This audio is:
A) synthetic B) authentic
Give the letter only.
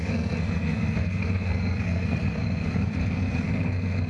A